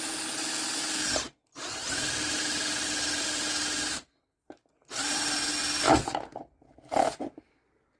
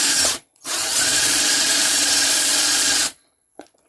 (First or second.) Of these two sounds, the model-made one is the second